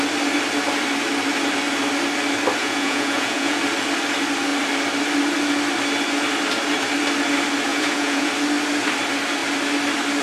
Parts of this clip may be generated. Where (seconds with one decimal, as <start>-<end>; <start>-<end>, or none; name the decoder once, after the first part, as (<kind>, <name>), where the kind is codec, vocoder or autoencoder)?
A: 2.6-3.6 (vocoder, Vocos); 7.7-8.3